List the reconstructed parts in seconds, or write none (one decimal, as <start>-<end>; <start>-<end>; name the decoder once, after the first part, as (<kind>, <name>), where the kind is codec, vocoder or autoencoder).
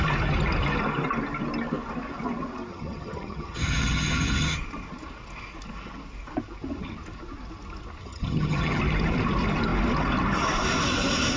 2.7-4.6 (vocoder, HiFi-GAN); 8.0-8.8